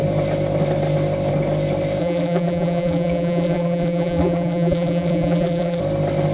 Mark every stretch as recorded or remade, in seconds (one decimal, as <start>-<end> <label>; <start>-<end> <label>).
0.0-2.0 recorded; 2.0-5.8 remade; 5.8-6.3 recorded